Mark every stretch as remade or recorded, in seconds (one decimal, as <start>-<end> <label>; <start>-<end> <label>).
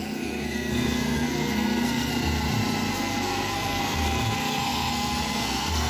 0.0-2.1 remade; 2.1-2.9 recorded; 2.9-5.9 remade